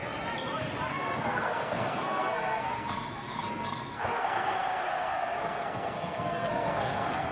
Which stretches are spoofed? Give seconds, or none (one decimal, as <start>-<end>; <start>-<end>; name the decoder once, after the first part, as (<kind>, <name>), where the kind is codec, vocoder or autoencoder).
0.9-7.3 (codec, SNAC)